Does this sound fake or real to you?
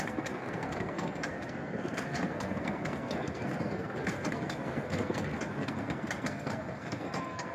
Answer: fake